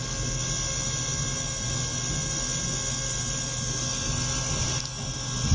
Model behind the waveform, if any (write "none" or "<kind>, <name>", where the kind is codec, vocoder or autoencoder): none